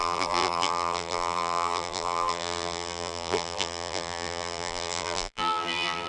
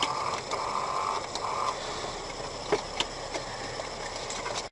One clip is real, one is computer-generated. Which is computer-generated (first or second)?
first